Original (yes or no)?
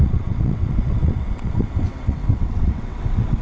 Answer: no